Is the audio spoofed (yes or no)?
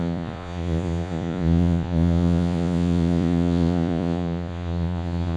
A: yes